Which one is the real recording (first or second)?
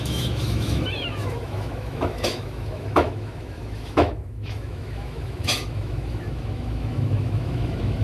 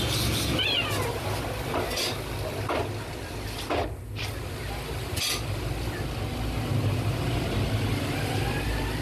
second